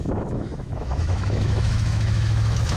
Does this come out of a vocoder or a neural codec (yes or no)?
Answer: yes